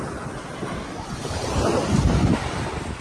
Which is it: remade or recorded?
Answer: recorded